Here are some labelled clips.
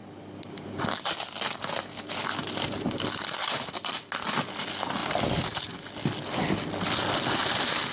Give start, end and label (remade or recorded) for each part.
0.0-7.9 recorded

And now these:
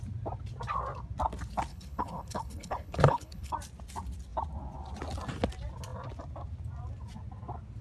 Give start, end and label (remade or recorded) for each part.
0.0-1.7 recorded; 1.7-3.5 remade; 3.5-7.8 recorded

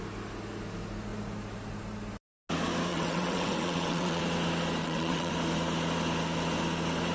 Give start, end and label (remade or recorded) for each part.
0.0-2.9 recorded; 2.9-4.2 remade; 4.2-4.8 recorded; 4.8-5.3 remade; 5.3-7.1 recorded

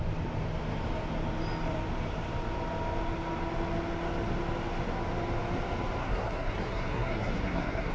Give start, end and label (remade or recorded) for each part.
0.0-6.0 recorded; 6.0-7.9 remade